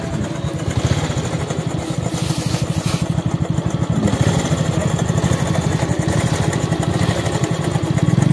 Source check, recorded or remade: recorded